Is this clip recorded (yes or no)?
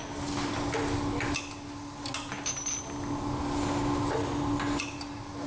yes